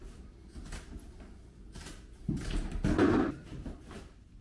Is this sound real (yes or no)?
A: yes